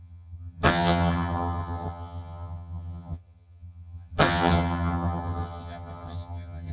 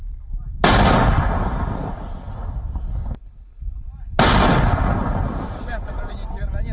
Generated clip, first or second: first